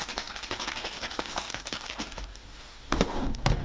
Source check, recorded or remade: remade